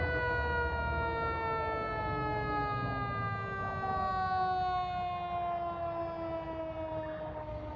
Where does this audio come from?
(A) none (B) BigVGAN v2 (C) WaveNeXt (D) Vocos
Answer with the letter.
A